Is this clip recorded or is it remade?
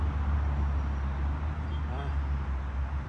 recorded